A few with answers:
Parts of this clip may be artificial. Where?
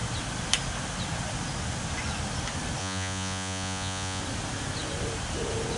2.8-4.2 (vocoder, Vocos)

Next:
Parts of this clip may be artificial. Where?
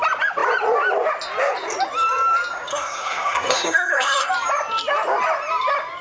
2.7-4.3 (codec, SNAC)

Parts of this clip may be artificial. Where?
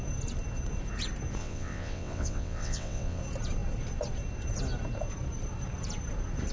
1.4-3.2 (vocoder, WaveNeXt)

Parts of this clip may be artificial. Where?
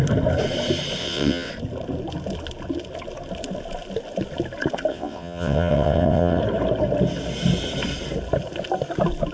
1.0-1.5 (vocoder, WaveNeXt); 4.9-6.4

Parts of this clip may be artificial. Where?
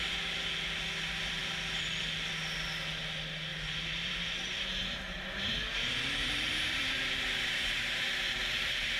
3.5-8.4 (vocoder, BigVGAN v2)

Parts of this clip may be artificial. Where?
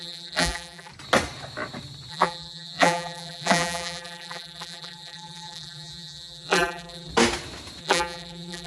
0.0-0.9 (vocoder, BigVGAN v2); 2.1-7.1; 7.8-8.7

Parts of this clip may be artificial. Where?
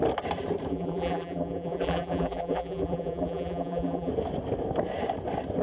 0.7-4.1 (vocoder, BigVGAN v2)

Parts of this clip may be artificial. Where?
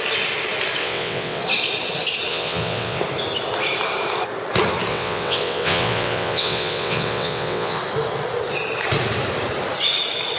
0.8-1.4 (vocoder, WaveNeXt); 2.3-3.0; 4.9-7.8